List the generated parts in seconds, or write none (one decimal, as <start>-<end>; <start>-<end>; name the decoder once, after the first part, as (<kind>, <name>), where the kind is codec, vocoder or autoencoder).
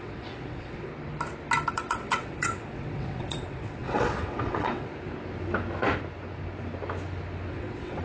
0.0-0.9 (vocoder, WaveNeXt); 1.7-4.9; 7.5-8.0